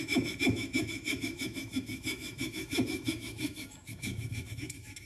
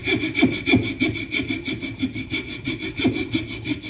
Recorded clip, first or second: second